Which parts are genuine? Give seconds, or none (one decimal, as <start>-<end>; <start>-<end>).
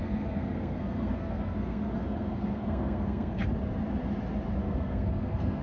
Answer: 3.4-4.6